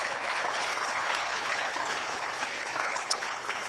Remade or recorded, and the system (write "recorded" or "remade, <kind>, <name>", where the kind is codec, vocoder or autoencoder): remade, codec, HILCodec